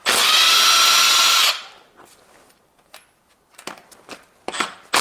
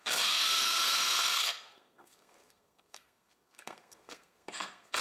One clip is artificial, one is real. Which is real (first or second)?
first